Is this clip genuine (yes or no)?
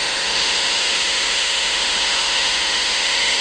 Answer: no